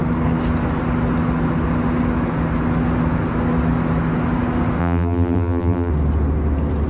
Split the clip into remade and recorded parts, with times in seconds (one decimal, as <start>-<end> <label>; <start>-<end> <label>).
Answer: 0.0-4.8 recorded; 4.8-5.9 remade; 5.9-6.9 recorded